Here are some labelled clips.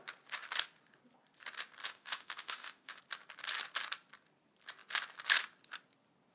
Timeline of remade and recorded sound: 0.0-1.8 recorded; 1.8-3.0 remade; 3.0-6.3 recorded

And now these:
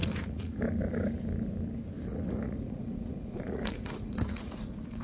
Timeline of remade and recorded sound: 0.0-0.6 remade; 0.6-2.1 recorded; 2.1-5.0 remade

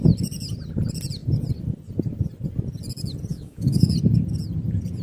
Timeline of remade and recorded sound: 0.0-3.3 recorded; 3.3-3.9 remade; 3.9-5.0 recorded

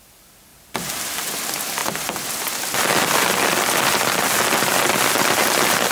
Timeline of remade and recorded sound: 0.0-0.5 recorded; 0.5-1.0 remade; 1.0-5.9 recorded

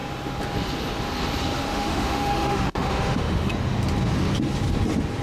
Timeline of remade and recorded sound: 0.0-1.7 recorded; 1.7-3.5 remade; 3.5-5.2 recorded

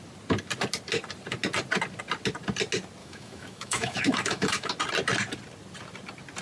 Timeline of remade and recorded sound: 0.0-3.0 recorded; 3.0-4.7 remade; 4.7-6.4 recorded

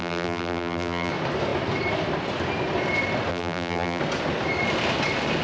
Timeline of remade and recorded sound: 0.0-1.1 remade; 1.1-3.3 recorded; 3.3-4.0 remade; 4.0-5.4 recorded